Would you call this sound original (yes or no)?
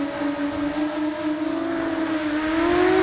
yes